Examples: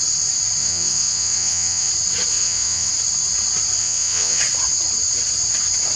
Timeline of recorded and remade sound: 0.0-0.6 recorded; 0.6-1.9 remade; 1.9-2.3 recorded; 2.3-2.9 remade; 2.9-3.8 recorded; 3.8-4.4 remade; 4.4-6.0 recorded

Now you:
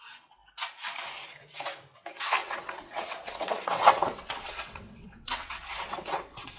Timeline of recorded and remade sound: 0.0-2.4 recorded; 2.4-6.6 remade

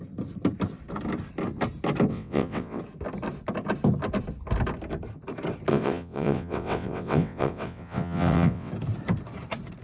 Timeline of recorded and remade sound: 0.0-2.1 recorded; 2.1-2.8 remade; 2.8-5.7 recorded; 5.7-8.7 remade; 8.7-9.8 recorded

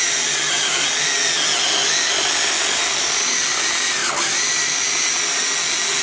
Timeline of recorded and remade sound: 0.0-6.0 recorded

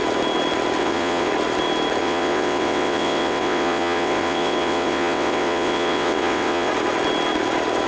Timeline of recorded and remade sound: 0.0-0.8 recorded; 0.8-1.3 remade; 1.3-2.0 recorded; 2.0-6.7 remade; 6.7-7.9 recorded

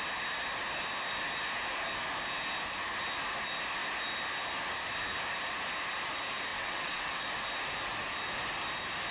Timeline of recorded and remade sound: 0.0-6.5 recorded; 6.5-7.2 remade; 7.2-9.1 recorded